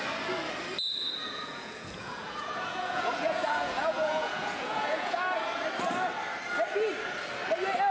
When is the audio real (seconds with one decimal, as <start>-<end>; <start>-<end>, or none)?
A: 0.0-1.2; 5.2-7.9